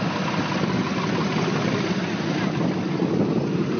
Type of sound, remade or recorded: recorded